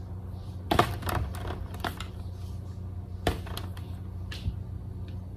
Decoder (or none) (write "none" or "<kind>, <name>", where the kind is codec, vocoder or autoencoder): none